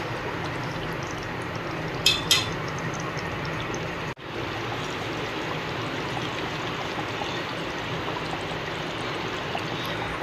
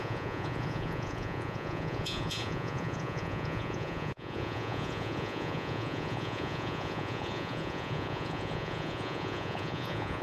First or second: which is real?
first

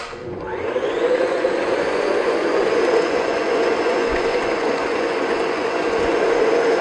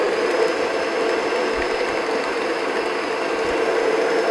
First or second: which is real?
second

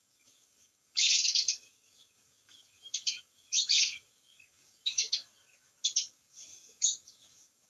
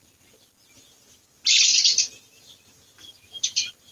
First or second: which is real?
second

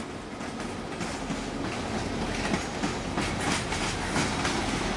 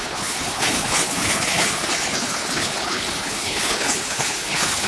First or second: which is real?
first